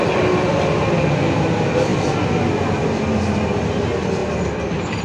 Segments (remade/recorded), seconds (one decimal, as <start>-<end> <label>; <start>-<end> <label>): 0.0-5.0 recorded